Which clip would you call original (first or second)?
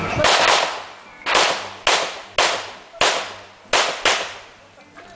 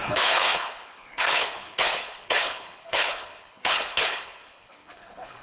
first